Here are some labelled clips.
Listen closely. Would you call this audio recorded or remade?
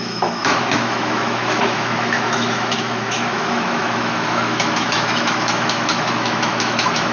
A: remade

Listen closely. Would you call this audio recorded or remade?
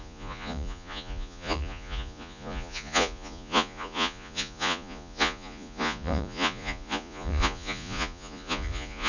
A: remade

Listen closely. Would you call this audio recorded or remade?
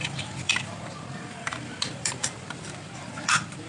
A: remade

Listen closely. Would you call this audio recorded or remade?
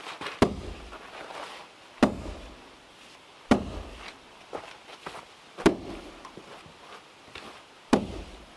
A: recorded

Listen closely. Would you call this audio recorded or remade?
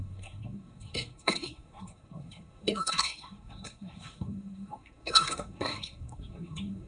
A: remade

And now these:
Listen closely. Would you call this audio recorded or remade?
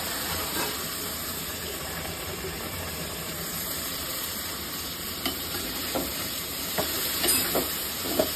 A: remade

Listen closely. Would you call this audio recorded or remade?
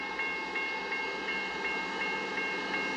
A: recorded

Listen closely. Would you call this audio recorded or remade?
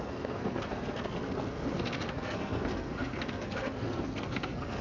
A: remade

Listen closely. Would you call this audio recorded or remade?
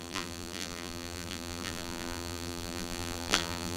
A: remade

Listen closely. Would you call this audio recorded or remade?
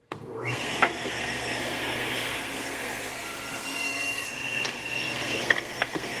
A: remade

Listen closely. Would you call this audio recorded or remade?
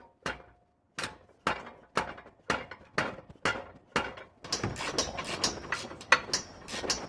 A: recorded